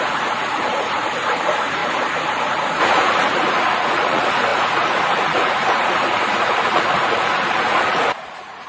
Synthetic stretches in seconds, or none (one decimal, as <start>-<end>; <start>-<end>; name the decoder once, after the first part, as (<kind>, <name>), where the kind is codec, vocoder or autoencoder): 0.0-1.8 (vocoder, Vocos); 2.4-8.7